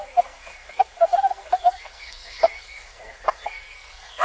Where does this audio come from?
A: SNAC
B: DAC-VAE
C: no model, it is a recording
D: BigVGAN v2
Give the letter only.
A